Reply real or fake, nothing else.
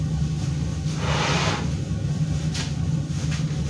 real